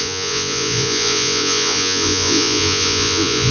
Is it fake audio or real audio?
fake